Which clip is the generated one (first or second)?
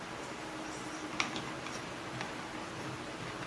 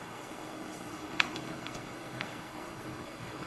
second